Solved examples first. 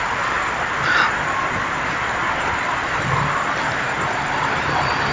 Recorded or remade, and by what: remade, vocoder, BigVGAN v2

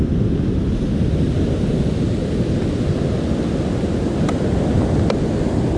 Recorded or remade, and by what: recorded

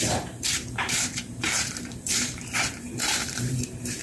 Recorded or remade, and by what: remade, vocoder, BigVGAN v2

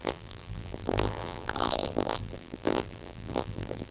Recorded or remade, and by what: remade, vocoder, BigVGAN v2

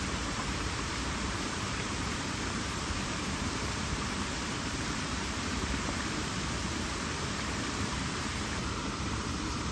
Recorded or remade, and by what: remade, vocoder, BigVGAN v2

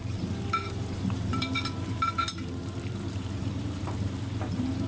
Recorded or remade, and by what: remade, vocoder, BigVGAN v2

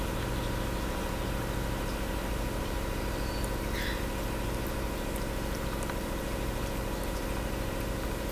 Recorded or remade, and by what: remade, vocoder, BigVGAN v2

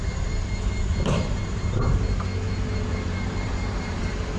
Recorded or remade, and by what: remade, vocoder, BigVGAN v2